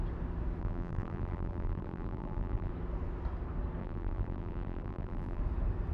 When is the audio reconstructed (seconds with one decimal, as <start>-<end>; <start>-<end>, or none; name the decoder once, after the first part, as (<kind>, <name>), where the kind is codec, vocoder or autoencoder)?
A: 0.6-2.7 (vocoder, BigVGAN v2); 3.8-5.4